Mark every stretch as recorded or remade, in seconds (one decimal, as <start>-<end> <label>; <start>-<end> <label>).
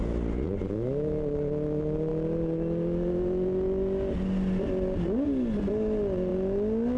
0.0-7.0 recorded